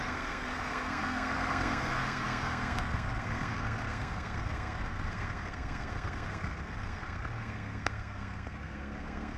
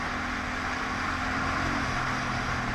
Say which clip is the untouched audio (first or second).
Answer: second